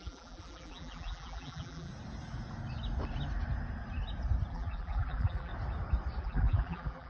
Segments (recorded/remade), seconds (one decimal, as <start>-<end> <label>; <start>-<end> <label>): 0.0-1.9 remade; 1.9-4.5 recorded; 4.5-5.5 remade; 5.5-6.2 recorded; 6.2-7.1 remade